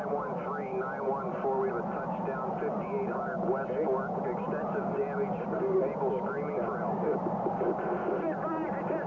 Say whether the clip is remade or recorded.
recorded